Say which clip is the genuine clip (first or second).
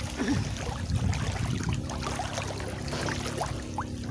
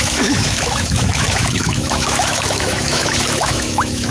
first